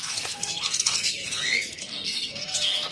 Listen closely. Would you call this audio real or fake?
fake